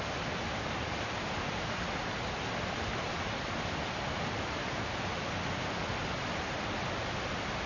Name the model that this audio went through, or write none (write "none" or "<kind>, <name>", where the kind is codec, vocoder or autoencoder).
none